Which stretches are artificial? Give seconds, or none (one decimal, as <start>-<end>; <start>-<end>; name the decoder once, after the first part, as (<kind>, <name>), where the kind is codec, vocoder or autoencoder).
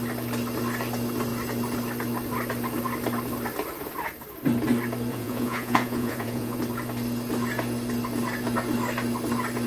5.1-6.6 (vocoder, Vocos)